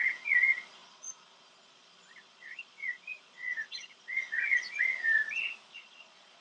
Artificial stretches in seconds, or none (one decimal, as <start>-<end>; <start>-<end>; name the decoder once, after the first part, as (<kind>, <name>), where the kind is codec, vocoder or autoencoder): 0.0-5.2 (vocoder, Vocos); 5.7-6.4